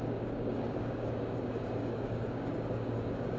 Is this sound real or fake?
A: fake